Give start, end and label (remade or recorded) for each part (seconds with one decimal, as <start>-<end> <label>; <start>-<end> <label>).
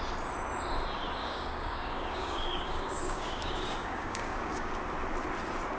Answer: 0.0-1.2 recorded; 1.2-4.7 remade; 4.7-5.8 recorded